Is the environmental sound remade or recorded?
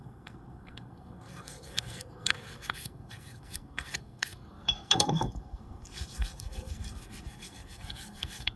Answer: remade